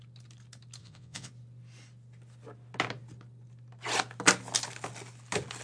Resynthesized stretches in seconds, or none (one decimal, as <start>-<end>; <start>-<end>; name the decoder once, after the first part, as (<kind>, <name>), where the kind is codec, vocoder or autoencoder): 0.8-1.3 (vocoder, WaveNeXt)